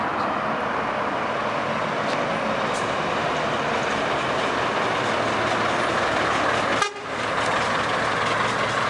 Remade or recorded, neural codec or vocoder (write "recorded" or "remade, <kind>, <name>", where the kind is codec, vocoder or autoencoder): recorded